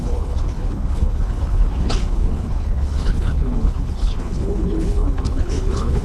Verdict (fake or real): fake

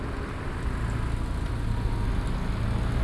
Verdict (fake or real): real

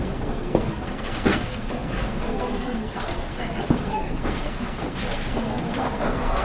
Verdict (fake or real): fake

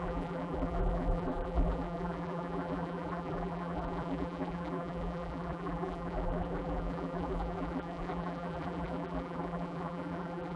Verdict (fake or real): fake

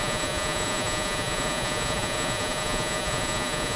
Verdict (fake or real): fake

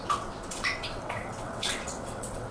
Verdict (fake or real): fake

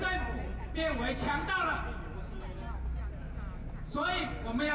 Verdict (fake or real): real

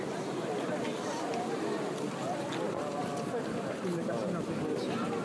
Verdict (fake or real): real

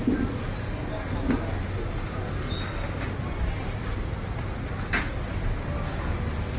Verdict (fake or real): real